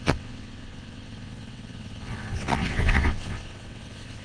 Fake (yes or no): yes